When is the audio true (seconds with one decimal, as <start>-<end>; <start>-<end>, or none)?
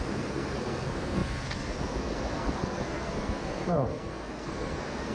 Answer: none